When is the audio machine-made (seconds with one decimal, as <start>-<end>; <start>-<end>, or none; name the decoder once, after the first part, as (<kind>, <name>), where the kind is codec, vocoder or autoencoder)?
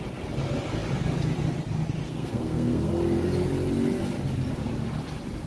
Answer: 2.1-2.9 (codec, SNAC)